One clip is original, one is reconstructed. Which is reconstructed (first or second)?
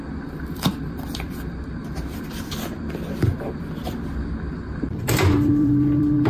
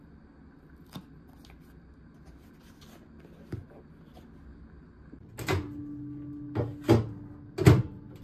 first